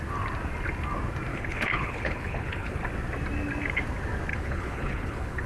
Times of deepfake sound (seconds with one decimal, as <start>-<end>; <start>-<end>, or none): 1.3-2.8; 4.3-5.5